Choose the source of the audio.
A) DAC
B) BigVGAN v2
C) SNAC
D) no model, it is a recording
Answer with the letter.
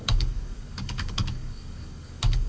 A